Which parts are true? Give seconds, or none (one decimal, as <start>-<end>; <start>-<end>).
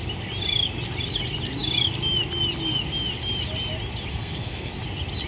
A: 0.0-4.1; 4.7-5.3